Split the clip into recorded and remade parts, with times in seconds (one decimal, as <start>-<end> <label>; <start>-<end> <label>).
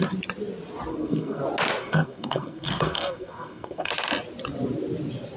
0.0-0.9 recorded; 0.9-1.4 remade; 1.4-1.8 recorded; 1.8-3.9 remade; 3.9-5.4 recorded